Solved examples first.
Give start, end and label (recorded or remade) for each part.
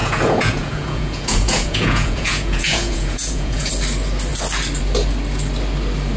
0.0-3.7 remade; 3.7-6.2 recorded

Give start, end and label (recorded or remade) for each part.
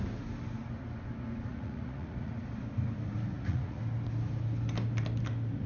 0.0-1.5 recorded; 1.5-2.3 remade; 2.3-3.3 recorded; 3.3-3.8 remade; 3.8-5.7 recorded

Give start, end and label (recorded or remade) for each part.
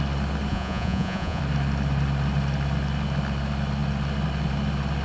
0.0-0.5 recorded; 0.5-1.4 remade; 1.4-5.0 recorded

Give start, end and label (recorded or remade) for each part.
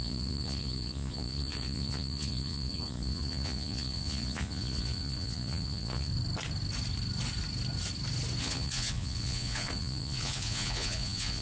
0.0-6.1 remade; 6.1-8.4 recorded; 8.4-11.4 remade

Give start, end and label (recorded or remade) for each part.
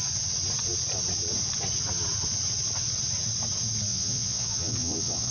0.0-3.9 recorded; 3.9-5.3 remade